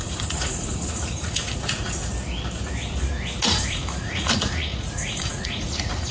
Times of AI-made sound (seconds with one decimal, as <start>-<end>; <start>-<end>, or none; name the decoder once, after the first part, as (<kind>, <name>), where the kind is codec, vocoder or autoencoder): 0.0-2.1 (vocoder, Vocos); 3.5-6.1